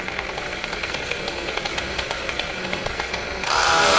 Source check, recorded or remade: remade